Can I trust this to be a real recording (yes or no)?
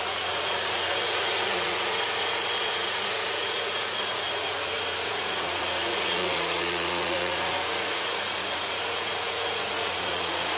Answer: no